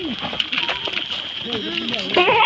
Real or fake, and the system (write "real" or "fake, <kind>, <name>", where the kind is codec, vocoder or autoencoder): real